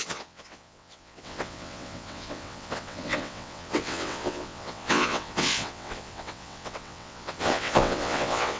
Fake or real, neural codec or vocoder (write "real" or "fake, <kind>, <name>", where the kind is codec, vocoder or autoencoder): fake, vocoder, WaveNeXt